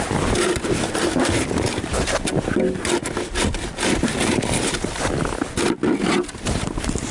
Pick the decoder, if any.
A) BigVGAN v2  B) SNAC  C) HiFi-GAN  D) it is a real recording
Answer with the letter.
D